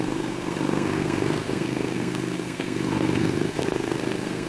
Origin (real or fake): fake